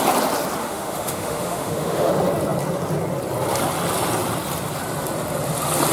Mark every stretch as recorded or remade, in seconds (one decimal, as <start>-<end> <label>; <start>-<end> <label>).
0.0-0.6 recorded; 0.6-2.1 remade; 2.1-5.9 recorded

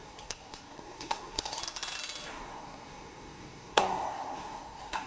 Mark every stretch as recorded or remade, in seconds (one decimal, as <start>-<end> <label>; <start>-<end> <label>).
0.0-1.6 remade; 1.6-2.3 recorded; 2.3-5.1 remade